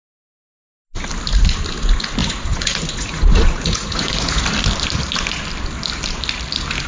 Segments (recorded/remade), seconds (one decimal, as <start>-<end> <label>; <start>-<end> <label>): 0.0-2.2 recorded; 2.2-4.4 remade; 4.4-6.9 recorded